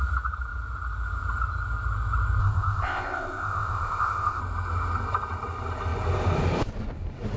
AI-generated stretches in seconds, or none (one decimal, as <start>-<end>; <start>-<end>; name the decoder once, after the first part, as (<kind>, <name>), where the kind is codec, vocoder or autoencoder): 2.4-4.4 (codec, ZipCodec)